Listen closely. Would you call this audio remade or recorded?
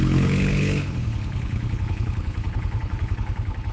remade